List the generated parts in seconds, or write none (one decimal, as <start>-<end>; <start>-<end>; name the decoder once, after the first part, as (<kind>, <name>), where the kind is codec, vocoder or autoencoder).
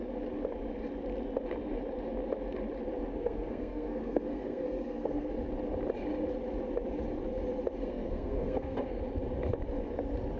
3.1-5.3 (codec, SNAC); 7.8-9.0